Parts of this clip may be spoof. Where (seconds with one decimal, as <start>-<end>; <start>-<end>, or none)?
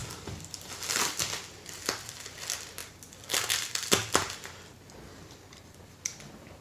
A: 0.0-1.0; 2.8-6.0